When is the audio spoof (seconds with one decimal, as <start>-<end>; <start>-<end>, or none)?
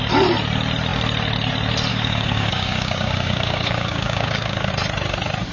1.9-4.7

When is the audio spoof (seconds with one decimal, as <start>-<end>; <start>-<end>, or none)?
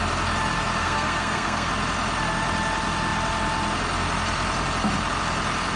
0.8-1.7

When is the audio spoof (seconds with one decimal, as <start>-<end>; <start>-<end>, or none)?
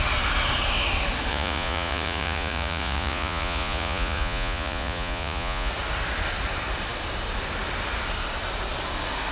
1.3-5.7